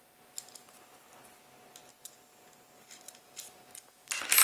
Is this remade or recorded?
recorded